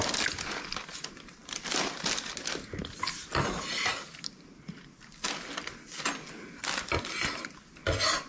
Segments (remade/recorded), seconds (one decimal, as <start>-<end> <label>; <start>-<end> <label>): 0.0-8.3 recorded